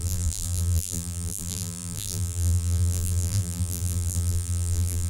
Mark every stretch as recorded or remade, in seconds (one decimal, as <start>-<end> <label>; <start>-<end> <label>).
0.0-5.1 remade

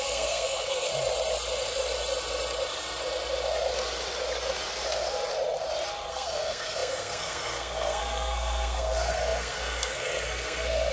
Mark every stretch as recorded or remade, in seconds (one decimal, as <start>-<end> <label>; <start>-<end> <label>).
0.0-0.9 remade; 0.9-6.1 recorded; 6.1-10.9 remade

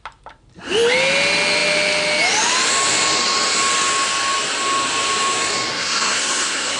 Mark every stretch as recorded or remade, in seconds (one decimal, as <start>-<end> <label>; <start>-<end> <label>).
0.0-5.7 recorded; 5.7-6.8 remade

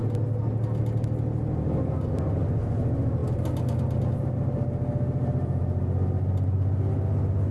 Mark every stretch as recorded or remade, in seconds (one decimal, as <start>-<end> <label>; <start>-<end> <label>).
0.0-7.5 recorded

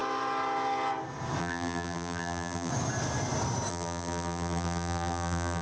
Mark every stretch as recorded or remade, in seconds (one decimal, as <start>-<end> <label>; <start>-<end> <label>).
0.0-1.4 recorded; 1.4-2.7 remade; 2.7-3.7 recorded; 3.7-5.6 remade

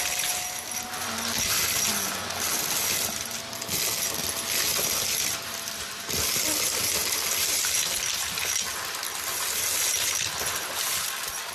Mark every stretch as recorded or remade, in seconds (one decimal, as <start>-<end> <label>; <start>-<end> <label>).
0.0-11.5 recorded

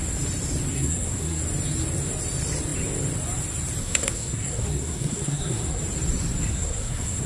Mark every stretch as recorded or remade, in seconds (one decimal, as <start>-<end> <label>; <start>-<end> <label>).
0.0-0.7 recorded; 0.7-1.4 remade; 1.4-3.8 recorded; 3.8-5.8 remade; 5.8-6.5 recorded; 6.5-7.3 remade